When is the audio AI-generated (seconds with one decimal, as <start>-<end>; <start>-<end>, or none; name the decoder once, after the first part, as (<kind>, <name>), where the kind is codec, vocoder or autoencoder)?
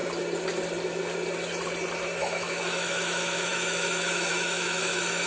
2.2-5.3 (autoencoder, DAC-VAE)